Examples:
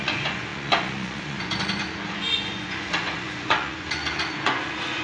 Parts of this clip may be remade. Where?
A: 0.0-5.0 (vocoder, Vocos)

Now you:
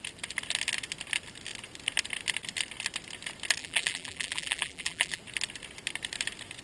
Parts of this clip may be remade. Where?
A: 3.6-5.2 (vocoder, BigVGAN v2)

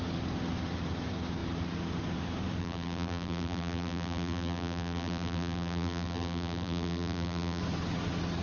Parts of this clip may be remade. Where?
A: 2.6-7.6 (vocoder, BigVGAN v2)

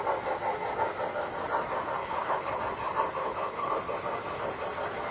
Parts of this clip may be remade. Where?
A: 2.0-2.6 (codec, HILCodec); 3.2-3.7